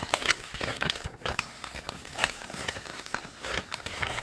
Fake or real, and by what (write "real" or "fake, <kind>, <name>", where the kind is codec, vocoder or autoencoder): fake, codec, SNAC